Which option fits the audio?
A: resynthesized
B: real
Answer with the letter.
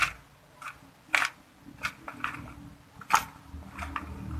B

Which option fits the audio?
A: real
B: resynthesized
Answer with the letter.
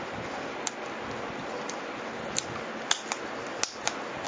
A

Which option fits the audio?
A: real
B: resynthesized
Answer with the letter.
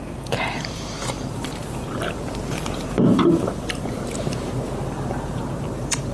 B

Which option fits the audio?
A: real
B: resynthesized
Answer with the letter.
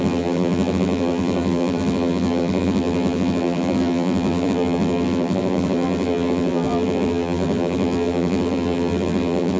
B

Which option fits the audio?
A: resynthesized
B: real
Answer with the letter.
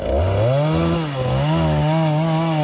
B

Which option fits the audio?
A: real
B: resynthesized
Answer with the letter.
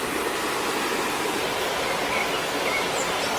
A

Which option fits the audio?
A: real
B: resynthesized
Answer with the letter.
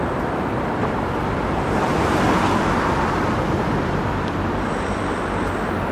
B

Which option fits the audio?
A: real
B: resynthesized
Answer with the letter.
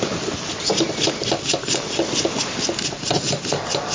A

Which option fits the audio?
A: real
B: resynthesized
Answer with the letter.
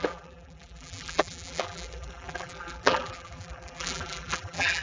B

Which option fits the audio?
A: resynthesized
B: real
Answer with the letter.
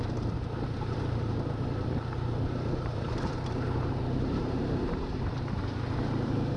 A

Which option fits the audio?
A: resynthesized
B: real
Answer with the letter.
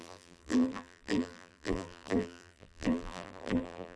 A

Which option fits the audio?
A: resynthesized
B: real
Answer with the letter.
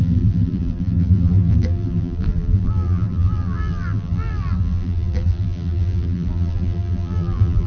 A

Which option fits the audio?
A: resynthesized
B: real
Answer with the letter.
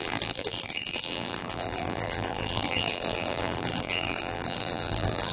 A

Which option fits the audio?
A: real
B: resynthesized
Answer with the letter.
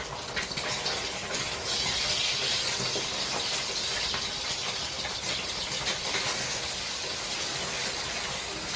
A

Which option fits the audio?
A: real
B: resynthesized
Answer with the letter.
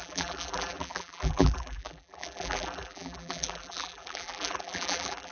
B